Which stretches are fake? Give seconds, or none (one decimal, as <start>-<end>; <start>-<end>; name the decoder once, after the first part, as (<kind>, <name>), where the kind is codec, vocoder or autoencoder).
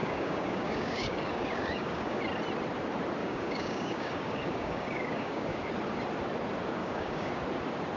0.0-2.2 (codec, DAC); 3.2-5.6; 6.8-7.4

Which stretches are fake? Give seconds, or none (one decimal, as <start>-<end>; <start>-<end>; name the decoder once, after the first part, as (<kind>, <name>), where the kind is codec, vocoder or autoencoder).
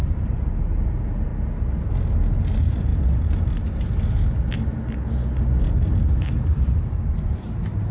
0.0-1.3 (vocoder, BigVGAN v2); 2.5-2.9; 6.2-7.9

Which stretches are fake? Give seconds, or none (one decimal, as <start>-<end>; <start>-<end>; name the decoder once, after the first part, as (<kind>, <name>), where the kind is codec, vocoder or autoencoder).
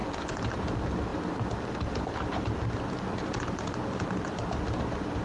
none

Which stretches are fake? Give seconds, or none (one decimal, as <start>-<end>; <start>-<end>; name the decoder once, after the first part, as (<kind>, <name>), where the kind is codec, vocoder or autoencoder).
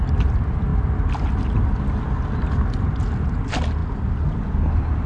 none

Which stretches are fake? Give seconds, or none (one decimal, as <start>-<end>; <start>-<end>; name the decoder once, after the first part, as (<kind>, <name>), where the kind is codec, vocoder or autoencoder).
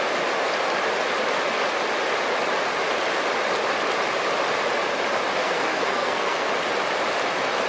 5.4-6.5 (codec, SNAC)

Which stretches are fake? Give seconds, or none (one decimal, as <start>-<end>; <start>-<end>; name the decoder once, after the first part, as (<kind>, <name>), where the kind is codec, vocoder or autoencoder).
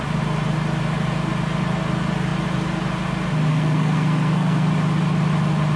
3.5-4.7 (codec, SNAC)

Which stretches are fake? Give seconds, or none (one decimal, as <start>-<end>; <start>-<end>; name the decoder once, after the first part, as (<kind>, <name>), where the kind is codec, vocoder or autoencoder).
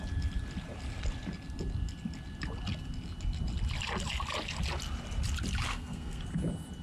5.7-6.2 (codec, SNAC)